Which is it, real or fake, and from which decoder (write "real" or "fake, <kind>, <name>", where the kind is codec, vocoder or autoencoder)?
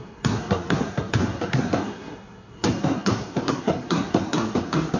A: fake, codec, SNAC